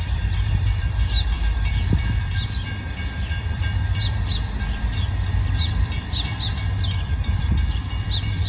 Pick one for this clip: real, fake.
fake